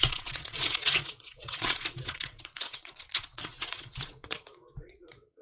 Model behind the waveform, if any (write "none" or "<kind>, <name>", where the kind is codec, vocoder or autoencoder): vocoder, WaveNeXt